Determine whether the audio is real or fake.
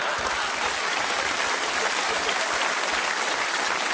real